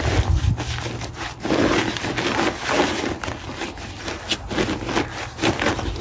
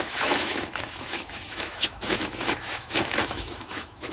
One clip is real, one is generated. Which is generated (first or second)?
second